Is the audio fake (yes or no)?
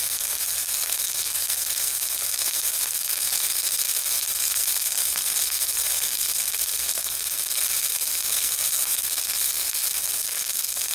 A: yes